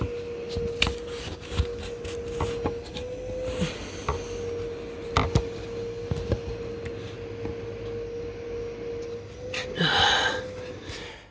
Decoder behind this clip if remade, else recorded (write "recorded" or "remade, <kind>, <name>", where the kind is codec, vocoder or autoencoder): recorded